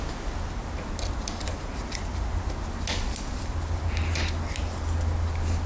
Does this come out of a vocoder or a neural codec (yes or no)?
no